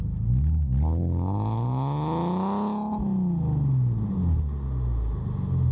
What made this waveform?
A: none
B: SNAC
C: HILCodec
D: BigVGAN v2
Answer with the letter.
A